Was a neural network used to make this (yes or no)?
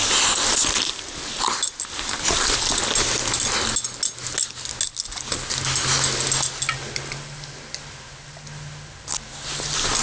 no